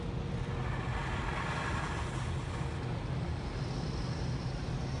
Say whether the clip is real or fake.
real